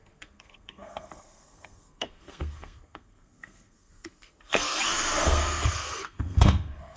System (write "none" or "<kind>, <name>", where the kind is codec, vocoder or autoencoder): codec, SNAC